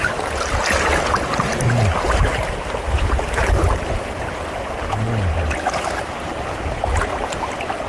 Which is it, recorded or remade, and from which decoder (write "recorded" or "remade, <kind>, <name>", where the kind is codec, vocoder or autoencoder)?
recorded